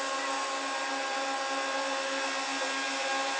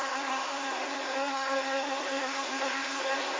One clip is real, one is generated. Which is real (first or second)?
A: first